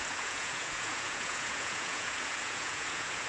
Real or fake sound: fake